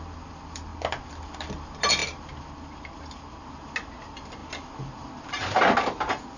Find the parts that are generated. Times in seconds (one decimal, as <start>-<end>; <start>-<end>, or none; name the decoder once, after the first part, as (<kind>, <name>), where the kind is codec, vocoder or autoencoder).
none